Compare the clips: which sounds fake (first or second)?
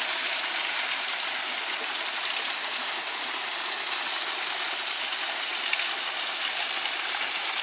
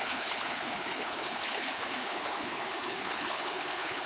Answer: second